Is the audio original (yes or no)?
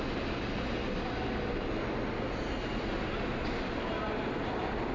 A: yes